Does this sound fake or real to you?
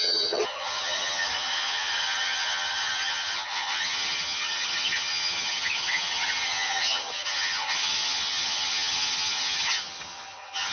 fake